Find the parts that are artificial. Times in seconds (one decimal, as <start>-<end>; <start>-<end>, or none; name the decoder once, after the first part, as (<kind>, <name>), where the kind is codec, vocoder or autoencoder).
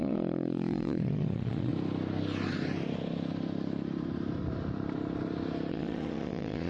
0.0-1.7 (vocoder, Vocos); 5.7-6.7